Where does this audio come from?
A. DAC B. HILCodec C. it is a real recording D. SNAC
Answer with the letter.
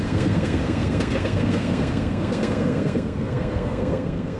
D